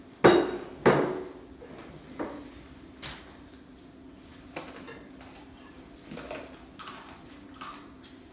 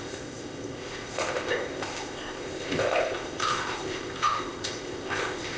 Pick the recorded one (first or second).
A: first